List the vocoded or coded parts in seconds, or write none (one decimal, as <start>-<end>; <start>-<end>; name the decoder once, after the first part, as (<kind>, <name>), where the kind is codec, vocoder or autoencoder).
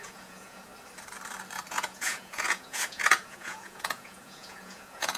0.0-0.7 (vocoder, Vocos); 1.7-5.2